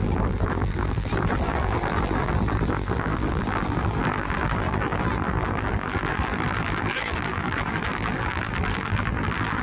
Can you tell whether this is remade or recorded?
remade